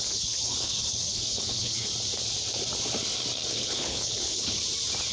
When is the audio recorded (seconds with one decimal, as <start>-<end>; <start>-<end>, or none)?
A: 1.9-3.5; 4.6-5.1